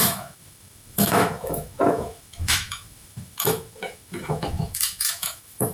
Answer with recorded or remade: remade